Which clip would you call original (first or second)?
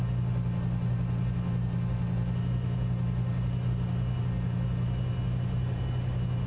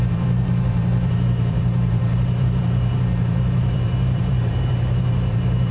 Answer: first